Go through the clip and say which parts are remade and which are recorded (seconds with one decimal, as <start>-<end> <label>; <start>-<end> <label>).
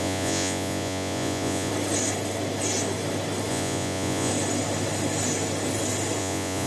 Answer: 0.0-1.7 remade; 1.7-3.5 recorded; 3.5-4.3 remade; 4.3-6.2 recorded; 6.2-6.7 remade